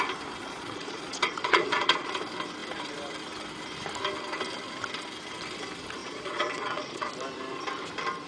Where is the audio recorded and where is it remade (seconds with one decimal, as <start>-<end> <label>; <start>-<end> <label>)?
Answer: 0.0-0.4 recorded; 0.4-2.1 remade; 2.1-6.0 recorded; 6.0-7.1 remade; 7.1-8.3 recorded